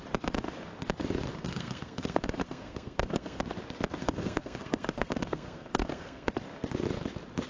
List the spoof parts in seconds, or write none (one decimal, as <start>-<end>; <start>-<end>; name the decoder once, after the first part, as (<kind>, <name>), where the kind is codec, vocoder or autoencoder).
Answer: 1.4-3.4 (codec, SNAC); 4.0-6.3